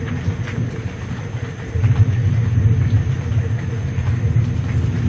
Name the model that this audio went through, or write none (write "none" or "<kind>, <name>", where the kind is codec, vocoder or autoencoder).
none